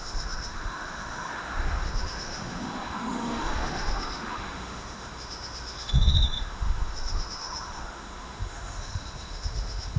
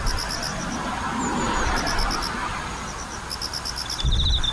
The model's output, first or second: first